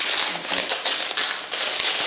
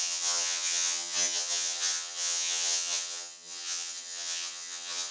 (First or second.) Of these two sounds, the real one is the first